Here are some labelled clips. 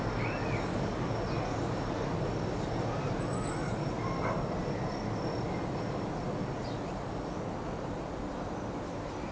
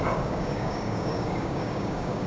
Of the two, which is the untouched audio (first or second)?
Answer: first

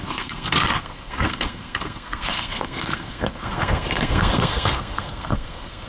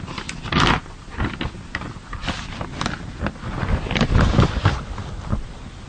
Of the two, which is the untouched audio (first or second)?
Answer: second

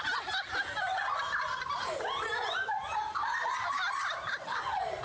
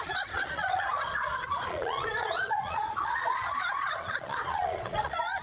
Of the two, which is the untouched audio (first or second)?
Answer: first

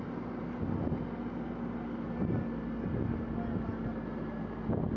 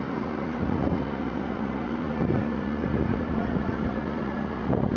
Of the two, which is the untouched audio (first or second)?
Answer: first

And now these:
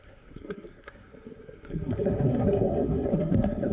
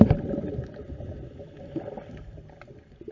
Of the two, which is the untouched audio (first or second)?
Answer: second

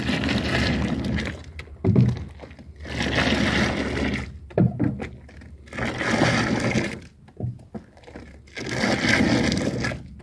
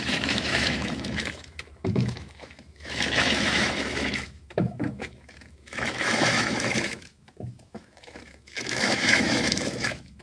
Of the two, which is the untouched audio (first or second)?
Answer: first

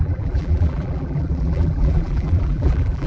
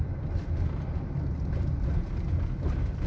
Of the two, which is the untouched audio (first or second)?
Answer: second